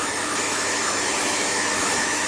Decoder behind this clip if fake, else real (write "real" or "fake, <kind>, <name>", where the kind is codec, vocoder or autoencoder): fake, autoencoder, DAC-VAE